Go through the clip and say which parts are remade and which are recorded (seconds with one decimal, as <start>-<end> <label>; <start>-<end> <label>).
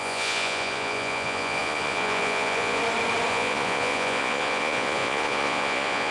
0.0-2.8 remade; 2.8-3.3 recorded; 3.3-6.1 remade